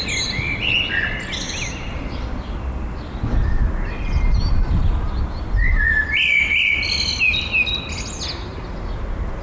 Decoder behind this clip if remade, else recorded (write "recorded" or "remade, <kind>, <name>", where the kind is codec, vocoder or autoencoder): recorded